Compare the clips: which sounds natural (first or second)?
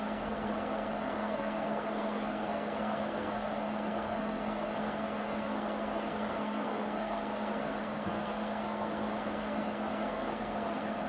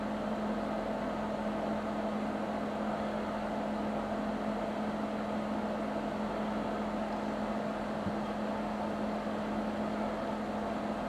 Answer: second